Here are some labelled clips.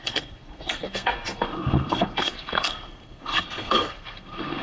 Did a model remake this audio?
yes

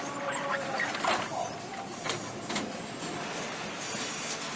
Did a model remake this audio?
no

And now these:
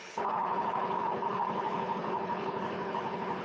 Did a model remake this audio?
yes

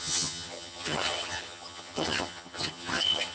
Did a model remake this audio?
yes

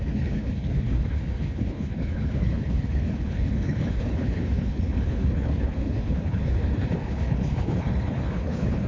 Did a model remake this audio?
yes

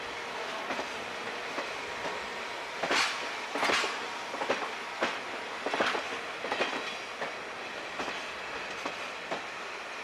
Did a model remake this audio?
no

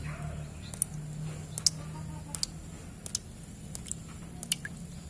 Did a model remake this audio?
no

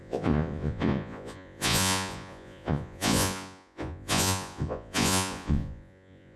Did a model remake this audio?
yes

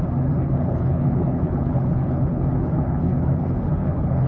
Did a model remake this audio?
yes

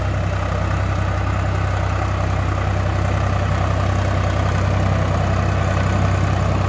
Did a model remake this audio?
no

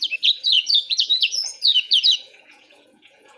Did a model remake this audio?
yes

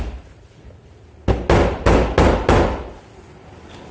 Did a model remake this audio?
no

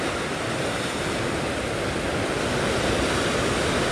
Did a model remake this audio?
no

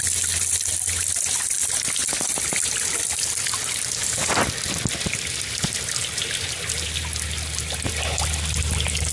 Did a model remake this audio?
no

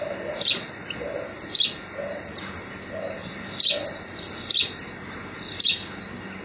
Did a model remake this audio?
no